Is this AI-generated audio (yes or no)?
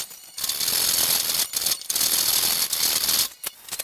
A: no